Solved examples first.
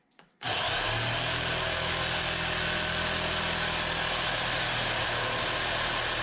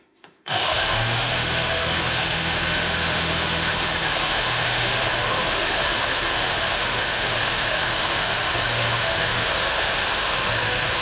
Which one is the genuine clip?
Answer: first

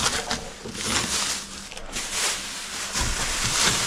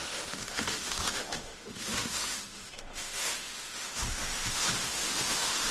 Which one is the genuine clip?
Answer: first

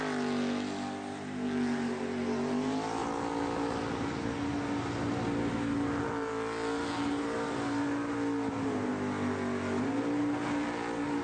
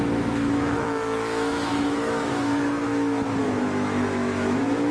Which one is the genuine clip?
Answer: first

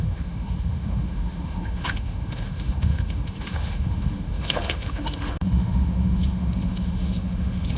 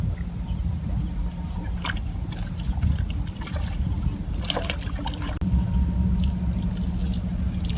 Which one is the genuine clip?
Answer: second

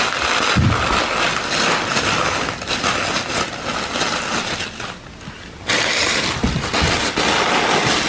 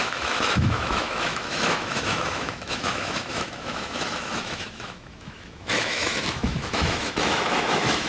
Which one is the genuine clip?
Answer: first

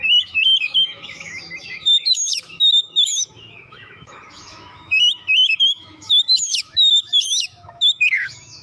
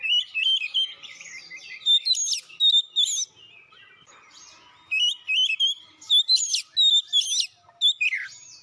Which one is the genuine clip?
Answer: second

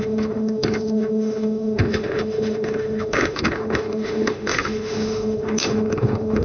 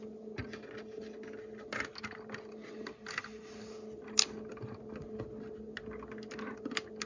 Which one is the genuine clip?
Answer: second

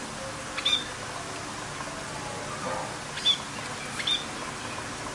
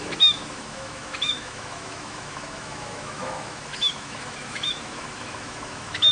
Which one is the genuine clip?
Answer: first